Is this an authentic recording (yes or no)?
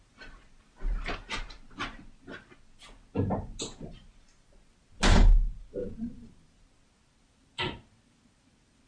yes